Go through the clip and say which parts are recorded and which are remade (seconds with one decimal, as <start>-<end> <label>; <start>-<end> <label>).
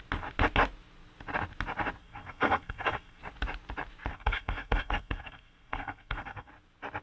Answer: 0.0-2.0 recorded; 2.0-3.2 remade; 3.2-4.1 recorded; 4.1-6.5 remade; 6.5-7.0 recorded